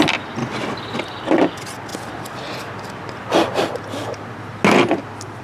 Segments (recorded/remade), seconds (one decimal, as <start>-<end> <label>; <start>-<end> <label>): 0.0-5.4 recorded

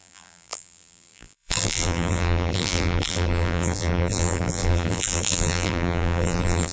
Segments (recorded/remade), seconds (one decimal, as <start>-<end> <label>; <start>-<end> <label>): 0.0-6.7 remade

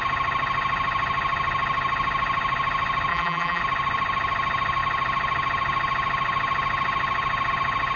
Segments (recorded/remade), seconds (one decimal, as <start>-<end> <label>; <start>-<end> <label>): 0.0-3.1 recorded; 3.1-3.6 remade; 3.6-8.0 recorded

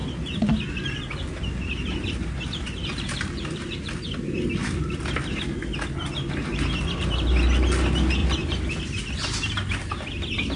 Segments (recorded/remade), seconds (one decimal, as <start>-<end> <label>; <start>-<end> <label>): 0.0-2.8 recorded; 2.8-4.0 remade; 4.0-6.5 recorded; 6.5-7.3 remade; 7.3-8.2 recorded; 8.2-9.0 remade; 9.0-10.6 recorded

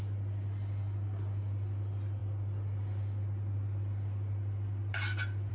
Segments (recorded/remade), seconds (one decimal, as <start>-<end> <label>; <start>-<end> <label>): 0.0-5.5 recorded

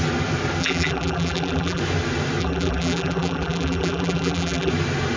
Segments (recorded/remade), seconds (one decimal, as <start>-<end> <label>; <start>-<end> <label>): 0.0-0.6 recorded; 0.6-1.8 remade; 1.8-2.4 recorded; 2.4-4.7 remade; 4.7-5.2 recorded

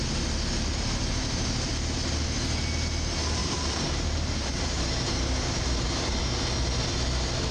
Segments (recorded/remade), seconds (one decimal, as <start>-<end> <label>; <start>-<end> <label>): 0.0-0.7 recorded; 0.7-1.7 remade; 1.7-3.4 recorded; 3.4-6.2 remade; 6.2-7.5 recorded

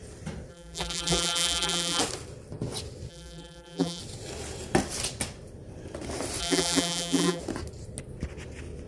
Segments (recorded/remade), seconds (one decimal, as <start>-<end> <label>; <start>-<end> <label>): 0.0-0.5 recorded; 0.5-2.0 remade; 2.0-3.1 recorded; 3.1-4.0 remade; 4.0-6.4 recorded; 6.4-7.4 remade; 7.4-8.9 recorded